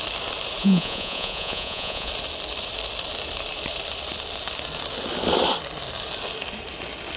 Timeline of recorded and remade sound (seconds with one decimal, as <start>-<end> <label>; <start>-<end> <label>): 0.0-0.6 recorded; 0.6-2.1 remade; 2.1-7.2 recorded